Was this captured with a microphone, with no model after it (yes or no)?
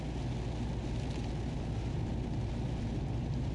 yes